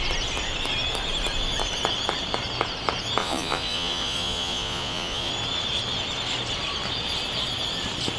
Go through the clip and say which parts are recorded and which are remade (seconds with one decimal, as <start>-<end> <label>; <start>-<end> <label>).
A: 0.0-3.2 recorded; 3.2-5.3 remade; 5.3-8.2 recorded

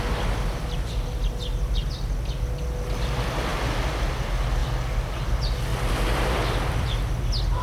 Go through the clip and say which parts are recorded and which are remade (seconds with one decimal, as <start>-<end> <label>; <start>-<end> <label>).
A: 0.0-5.7 recorded; 5.7-6.4 remade; 6.4-7.6 recorded

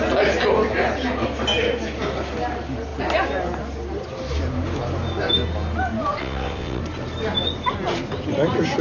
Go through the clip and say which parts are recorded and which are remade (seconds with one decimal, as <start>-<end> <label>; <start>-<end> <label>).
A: 0.0-6.2 recorded; 6.2-6.8 remade; 6.8-8.8 recorded

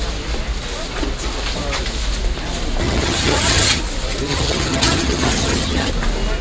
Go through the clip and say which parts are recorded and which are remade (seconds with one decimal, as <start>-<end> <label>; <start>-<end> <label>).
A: 0.0-2.8 recorded; 2.8-3.8 remade; 3.8-4.3 recorded; 4.3-5.9 remade; 5.9-6.4 recorded

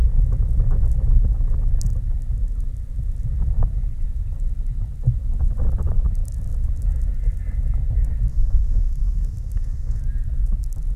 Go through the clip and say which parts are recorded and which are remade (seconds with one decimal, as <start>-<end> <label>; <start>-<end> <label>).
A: 0.0-8.3 recorded; 8.3-10.0 remade; 10.0-11.0 recorded

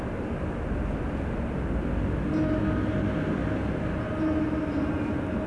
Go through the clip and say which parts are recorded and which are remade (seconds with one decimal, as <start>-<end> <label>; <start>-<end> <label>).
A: 0.0-5.5 recorded

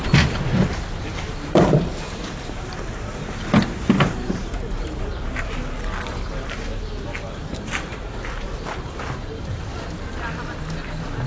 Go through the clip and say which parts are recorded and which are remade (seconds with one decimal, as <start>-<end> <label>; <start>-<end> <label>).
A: 0.0-5.1 remade; 5.1-6.1 recorded; 6.1-6.7 remade; 6.7-7.3 recorded; 7.3-9.7 remade; 9.7-11.3 recorded

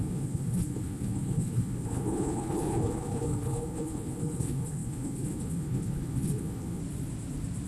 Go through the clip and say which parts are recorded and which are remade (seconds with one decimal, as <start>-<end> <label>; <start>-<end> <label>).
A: 0.0-6.8 remade; 6.8-7.7 recorded